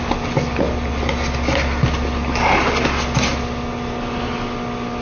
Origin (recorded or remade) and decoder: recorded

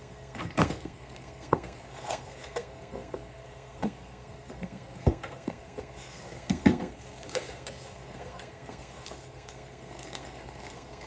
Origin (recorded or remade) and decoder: remade, codec, SNAC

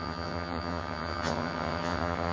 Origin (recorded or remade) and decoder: remade, vocoder, HiFi-GAN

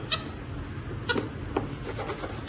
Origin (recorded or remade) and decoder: recorded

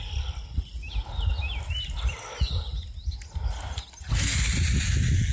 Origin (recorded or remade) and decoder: recorded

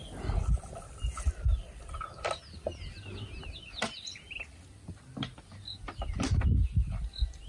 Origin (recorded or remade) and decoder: recorded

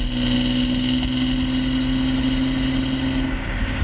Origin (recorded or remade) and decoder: recorded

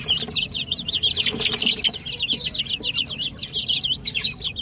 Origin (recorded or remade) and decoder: recorded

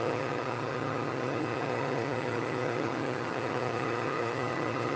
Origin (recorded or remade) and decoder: remade, vocoder, HiFi-GAN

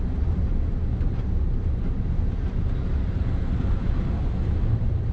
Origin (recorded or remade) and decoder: recorded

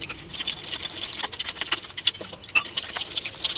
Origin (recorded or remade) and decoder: recorded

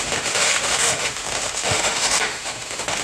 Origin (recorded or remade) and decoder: remade, autoencoder, DAC-VAE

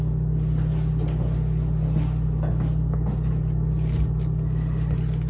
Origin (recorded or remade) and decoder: recorded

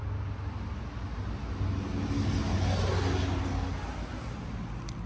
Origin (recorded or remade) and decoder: recorded